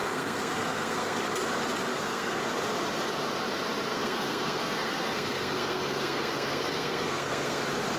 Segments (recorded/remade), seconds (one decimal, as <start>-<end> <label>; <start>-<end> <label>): 0.0-1.2 remade; 1.2-1.9 recorded; 1.9-2.4 remade; 2.4-3.9 recorded; 3.9-7.6 remade; 7.6-8.0 recorded